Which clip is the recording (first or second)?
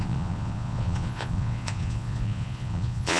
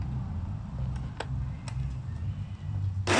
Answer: second